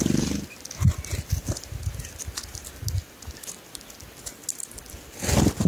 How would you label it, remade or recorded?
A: recorded